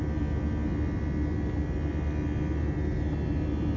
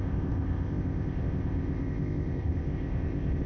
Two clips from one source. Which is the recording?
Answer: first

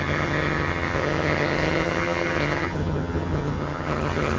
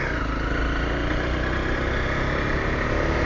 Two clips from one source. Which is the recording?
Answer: second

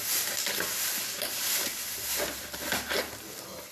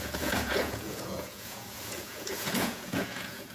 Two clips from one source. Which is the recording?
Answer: first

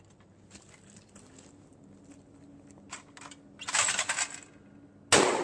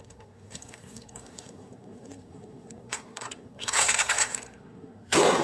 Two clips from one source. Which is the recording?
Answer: first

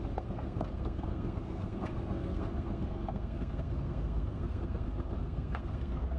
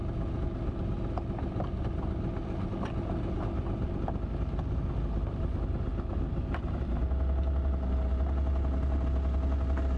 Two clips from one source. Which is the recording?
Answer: second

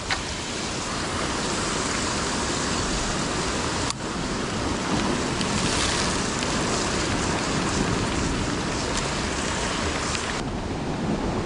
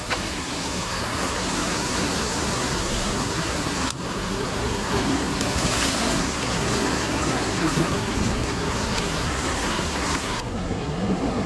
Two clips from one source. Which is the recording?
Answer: first